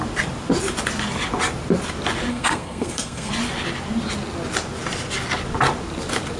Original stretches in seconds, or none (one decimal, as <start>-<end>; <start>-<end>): 0.0-2.3; 3.3-6.4